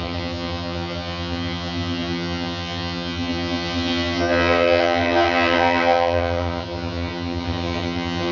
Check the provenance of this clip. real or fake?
fake